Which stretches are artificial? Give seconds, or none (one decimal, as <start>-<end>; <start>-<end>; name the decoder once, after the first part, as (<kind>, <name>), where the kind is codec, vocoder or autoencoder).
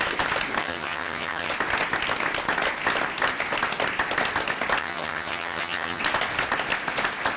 0.6-1.5 (vocoder, HiFi-GAN); 4.8-6.0